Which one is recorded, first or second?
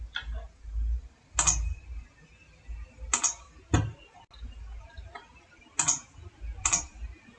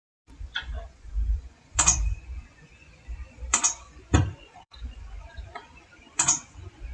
first